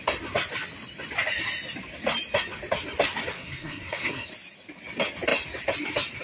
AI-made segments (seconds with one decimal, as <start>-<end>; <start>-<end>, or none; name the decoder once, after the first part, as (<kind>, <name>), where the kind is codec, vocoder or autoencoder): 3.3-4.3 (codec, SNAC)